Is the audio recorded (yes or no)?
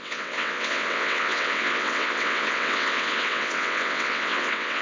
no